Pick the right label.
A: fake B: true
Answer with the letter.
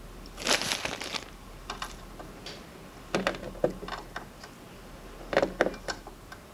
B